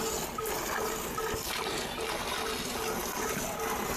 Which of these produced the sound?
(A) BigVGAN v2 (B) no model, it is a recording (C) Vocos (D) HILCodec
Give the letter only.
B